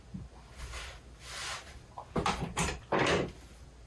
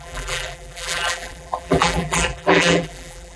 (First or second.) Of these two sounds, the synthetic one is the second